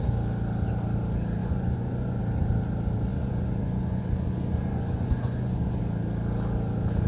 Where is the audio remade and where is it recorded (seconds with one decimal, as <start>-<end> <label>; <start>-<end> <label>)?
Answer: 0.0-1.4 recorded; 1.4-2.2 remade; 2.2-3.1 recorded; 3.1-5.8 remade; 5.8-7.1 recorded